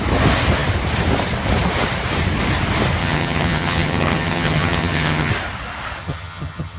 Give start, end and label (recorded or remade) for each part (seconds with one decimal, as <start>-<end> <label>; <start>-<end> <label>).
0.0-3.0 recorded; 3.0-5.3 remade; 5.3-6.0 recorded; 6.0-6.8 remade